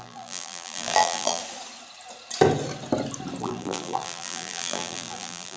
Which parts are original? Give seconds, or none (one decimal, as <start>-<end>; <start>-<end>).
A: 1.4-3.4